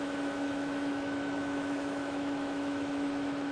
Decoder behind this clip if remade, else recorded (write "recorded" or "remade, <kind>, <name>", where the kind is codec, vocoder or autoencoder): remade, autoencoder, DAC-VAE